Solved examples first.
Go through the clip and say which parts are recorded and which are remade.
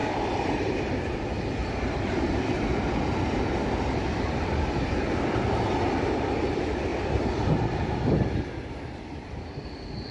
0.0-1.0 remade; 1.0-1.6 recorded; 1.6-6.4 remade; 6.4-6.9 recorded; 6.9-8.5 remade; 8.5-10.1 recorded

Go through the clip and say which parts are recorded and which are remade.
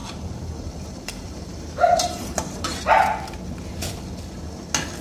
0.0-2.8 remade; 2.8-5.0 recorded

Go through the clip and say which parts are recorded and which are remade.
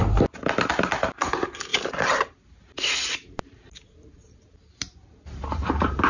0.0-0.7 recorded; 0.7-6.1 remade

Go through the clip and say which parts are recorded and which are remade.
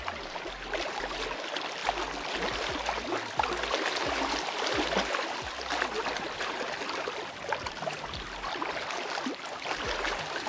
0.0-10.5 recorded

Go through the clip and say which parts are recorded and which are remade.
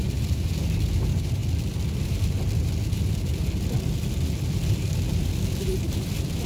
0.0-1.4 remade; 1.4-3.8 recorded; 3.8-6.5 remade